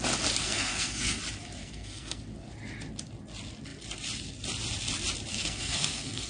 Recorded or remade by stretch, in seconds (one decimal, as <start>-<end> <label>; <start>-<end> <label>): 0.0-0.4 recorded; 0.4-1.2 remade; 1.2-1.6 recorded; 1.6-2.2 remade; 2.2-5.3 recorded; 5.3-6.3 remade